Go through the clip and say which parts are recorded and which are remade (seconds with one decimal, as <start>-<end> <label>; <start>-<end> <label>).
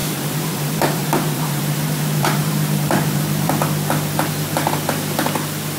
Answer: 0.0-3.5 remade; 3.5-5.8 recorded